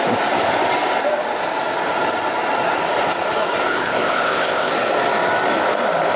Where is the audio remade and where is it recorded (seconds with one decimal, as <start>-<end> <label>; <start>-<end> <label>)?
0.0-3.6 recorded; 3.6-4.7 remade; 4.7-6.2 recorded